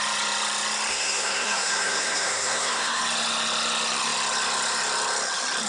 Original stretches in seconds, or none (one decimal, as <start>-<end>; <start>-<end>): 0.0-0.9; 3.0-5.7